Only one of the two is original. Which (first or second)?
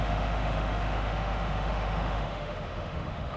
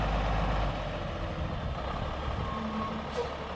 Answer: second